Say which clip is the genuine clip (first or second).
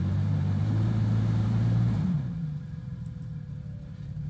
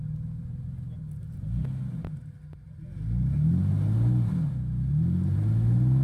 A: second